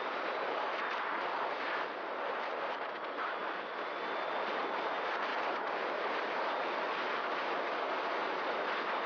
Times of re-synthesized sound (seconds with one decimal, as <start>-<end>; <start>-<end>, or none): 8.2-9.1